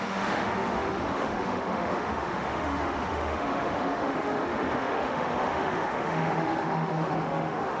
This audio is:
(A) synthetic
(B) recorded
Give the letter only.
A